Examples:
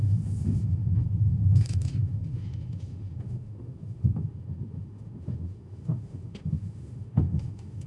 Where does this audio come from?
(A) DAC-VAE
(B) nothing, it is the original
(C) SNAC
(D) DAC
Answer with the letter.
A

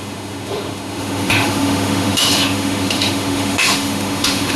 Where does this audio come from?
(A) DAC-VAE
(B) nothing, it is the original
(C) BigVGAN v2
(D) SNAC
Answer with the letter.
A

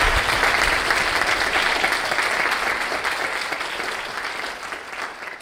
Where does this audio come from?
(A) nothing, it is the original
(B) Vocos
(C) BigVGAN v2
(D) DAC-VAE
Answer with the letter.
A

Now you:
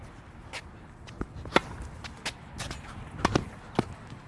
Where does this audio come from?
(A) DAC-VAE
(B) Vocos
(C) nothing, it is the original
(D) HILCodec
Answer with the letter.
C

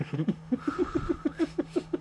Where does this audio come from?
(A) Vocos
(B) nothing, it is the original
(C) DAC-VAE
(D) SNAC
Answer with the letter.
C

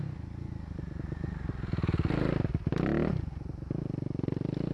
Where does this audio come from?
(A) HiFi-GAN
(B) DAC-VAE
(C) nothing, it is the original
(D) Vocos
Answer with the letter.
C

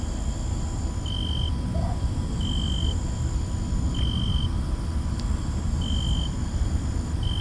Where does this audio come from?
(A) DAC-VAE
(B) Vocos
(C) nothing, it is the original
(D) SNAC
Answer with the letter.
C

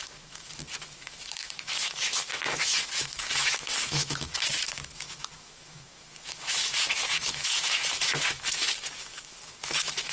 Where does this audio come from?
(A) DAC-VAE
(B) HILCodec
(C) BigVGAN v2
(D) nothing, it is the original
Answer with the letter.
A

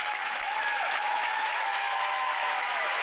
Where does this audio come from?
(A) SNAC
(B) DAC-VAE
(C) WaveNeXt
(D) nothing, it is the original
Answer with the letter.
B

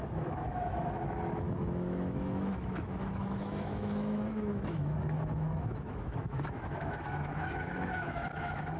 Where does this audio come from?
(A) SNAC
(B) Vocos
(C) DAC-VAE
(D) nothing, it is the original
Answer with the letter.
C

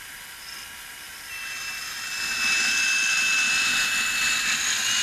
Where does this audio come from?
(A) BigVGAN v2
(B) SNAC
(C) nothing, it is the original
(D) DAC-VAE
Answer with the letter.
C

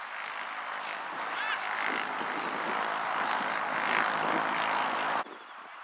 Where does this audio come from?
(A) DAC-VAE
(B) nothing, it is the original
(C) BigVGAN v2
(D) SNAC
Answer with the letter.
B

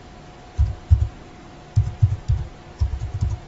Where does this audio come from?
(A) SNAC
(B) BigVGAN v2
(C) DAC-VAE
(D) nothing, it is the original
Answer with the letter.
D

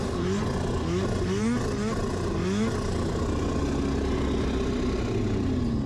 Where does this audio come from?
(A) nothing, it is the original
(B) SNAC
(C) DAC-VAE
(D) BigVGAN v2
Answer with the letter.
A